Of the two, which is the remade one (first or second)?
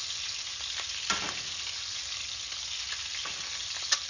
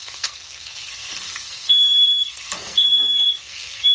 second